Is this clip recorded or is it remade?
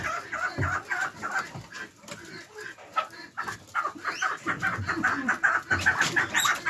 recorded